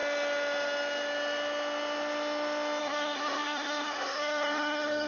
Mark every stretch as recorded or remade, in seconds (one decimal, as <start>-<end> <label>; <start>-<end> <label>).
0.0-2.8 recorded; 2.8-5.1 remade